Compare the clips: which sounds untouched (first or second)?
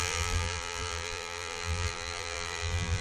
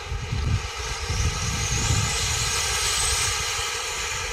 second